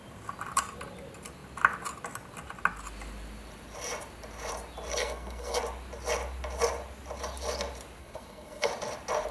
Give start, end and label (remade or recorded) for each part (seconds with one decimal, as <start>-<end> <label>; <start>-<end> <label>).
0.0-4.9 recorded; 4.9-5.6 remade; 5.6-8.0 recorded; 8.0-8.7 remade; 8.7-9.3 recorded